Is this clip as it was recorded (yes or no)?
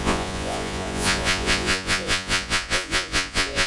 no